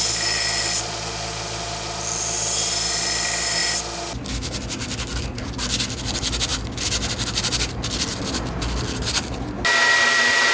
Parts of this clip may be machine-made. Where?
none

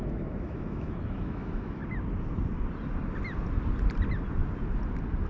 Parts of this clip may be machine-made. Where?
0.0-1.8 (autoencoder, DAC-VAE)

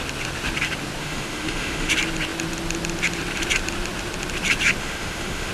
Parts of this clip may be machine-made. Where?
1.0-1.9 (autoencoder, DAC-VAE); 4.8-5.5